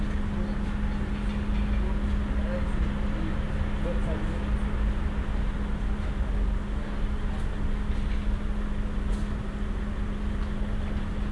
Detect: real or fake real